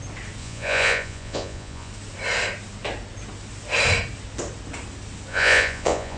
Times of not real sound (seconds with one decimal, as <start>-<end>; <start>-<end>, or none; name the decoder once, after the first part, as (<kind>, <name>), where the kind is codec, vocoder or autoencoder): 0.4-1.9 (vocoder, Vocos); 5.3-6.2